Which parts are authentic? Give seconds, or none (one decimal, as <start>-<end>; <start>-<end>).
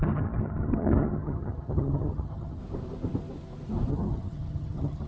2.6-3.9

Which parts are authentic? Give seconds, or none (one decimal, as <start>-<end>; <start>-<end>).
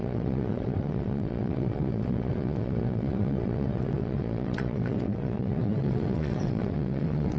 none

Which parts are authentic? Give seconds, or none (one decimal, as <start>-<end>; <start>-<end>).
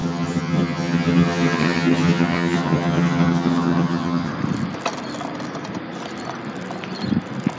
4.3-7.6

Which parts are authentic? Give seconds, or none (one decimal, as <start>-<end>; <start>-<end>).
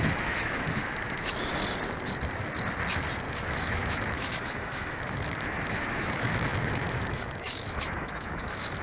1.5-3.3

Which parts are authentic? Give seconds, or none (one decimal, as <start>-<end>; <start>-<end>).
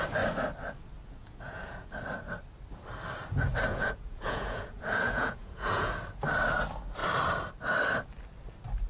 0.0-1.2; 1.9-3.7; 5.9-8.9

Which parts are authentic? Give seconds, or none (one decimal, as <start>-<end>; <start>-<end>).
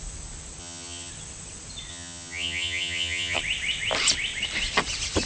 0.0-0.6; 1.1-1.9; 3.4-5.3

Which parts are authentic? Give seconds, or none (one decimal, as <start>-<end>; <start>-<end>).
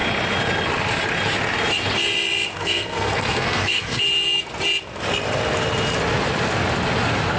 0.0-2.5; 4.0-7.4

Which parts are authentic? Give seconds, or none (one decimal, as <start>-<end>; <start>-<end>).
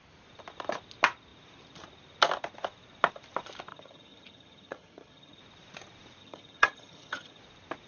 0.0-3.7; 5.4-6.2; 7.4-7.9